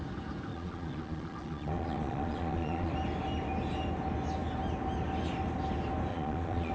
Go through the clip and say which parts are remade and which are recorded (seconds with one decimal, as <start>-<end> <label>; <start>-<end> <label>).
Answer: 0.0-0.5 recorded; 0.5-2.9 remade; 2.9-6.1 recorded; 6.1-6.7 remade